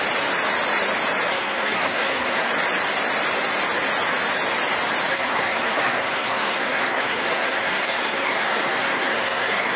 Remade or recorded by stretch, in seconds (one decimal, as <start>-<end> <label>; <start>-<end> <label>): 0.0-1.3 recorded; 1.3-2.5 remade; 2.5-5.1 recorded; 5.1-9.8 remade